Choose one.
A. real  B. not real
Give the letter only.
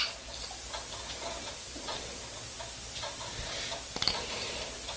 A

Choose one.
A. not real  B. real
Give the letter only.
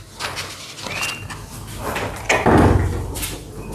B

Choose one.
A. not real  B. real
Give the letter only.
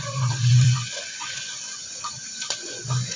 A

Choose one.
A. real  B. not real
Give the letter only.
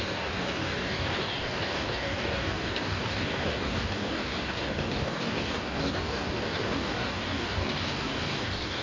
B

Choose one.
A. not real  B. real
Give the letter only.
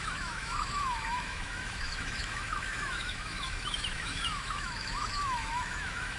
A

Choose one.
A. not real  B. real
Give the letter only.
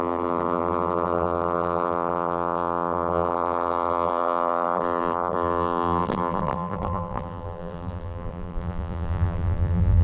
A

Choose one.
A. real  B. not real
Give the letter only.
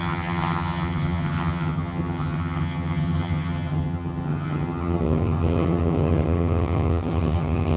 B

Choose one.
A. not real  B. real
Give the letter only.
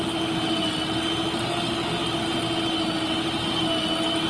B